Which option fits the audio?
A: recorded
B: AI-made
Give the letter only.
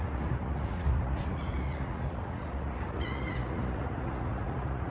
B